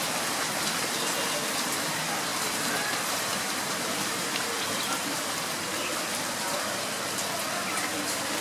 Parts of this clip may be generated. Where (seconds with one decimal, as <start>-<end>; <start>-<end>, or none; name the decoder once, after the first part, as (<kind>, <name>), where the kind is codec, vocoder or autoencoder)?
2.3-6.8 (vocoder, BigVGAN v2)